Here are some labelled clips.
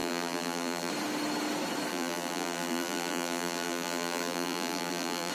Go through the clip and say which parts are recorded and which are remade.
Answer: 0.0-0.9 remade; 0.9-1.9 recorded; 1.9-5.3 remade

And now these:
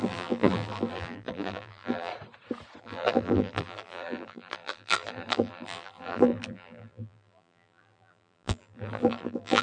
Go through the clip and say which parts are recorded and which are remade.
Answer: 0.0-2.1 remade; 2.1-2.8 recorded; 2.8-9.6 remade

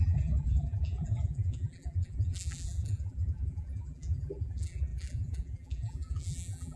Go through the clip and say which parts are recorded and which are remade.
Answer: 0.0-6.8 remade

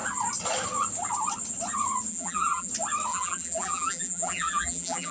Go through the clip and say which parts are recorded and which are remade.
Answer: 0.0-2.1 recorded; 2.1-2.7 remade; 2.7-3.1 recorded; 3.1-5.1 remade

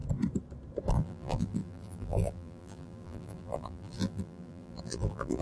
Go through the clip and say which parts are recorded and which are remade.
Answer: 0.0-0.9 recorded; 0.9-5.4 remade

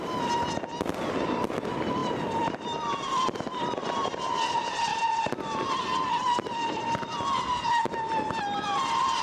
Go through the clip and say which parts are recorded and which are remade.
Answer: 0.0-9.2 recorded

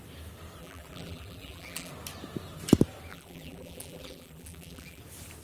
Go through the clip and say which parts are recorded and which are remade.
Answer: 0.0-0.6 recorded; 0.6-1.9 remade; 1.9-3.1 recorded; 3.1-5.0 remade; 5.0-5.4 recorded